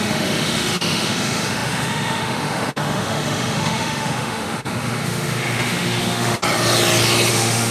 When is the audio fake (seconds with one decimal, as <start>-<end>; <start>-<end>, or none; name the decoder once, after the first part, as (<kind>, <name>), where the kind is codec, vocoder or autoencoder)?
0.0-6.4 (autoencoder, DAC-VAE); 7.3-7.7